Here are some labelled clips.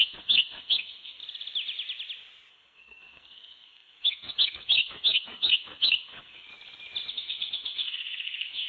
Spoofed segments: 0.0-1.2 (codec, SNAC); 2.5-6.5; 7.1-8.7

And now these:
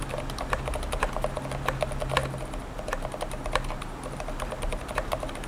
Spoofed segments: none